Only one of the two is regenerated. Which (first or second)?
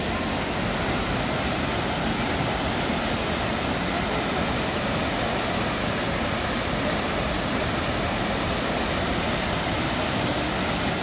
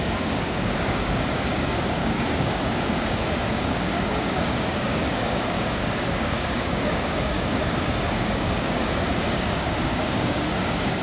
second